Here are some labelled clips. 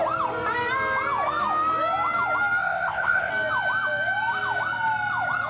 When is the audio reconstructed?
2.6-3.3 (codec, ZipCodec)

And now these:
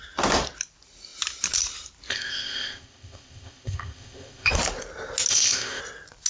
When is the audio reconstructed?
2.1-4.5 (codec, ZipCodec); 5.3-5.8

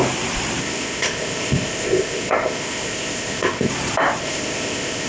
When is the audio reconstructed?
0.6-3.7 (codec, ZipCodec); 4.2-5.1

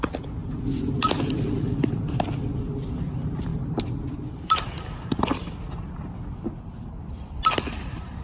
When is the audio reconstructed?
none